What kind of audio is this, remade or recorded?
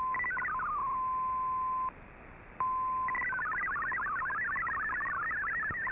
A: recorded